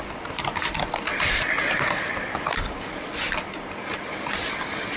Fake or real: fake